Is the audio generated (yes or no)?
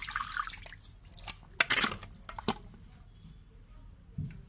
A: no